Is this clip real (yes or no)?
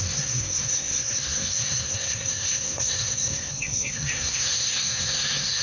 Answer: no